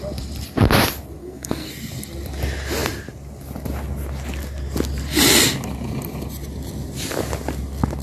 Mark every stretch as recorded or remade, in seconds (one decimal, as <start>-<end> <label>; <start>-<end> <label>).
0.0-1.2 recorded; 1.2-1.7 remade; 1.7-8.0 recorded